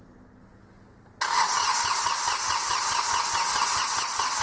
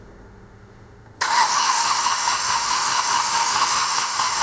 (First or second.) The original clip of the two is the first